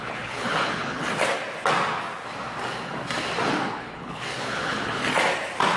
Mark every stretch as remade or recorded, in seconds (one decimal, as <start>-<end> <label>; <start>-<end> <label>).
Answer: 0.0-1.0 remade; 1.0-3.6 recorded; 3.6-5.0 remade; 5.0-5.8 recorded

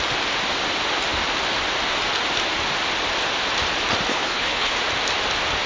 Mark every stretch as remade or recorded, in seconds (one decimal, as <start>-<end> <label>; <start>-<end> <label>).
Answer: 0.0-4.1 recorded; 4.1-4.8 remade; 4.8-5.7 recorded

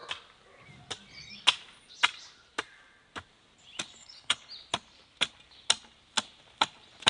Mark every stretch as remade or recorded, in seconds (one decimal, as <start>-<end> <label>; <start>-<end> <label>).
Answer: 0.0-4.0 recorded; 4.0-4.5 remade; 4.5-7.1 recorded

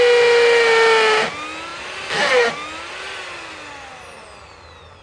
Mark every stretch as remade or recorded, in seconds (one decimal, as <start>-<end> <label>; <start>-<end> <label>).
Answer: 0.0-5.0 recorded